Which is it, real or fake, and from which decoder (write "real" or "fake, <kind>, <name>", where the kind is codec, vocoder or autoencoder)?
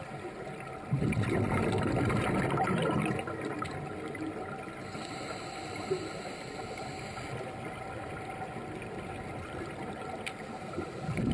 real